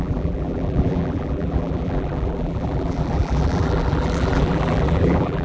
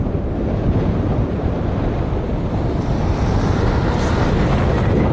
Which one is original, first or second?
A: second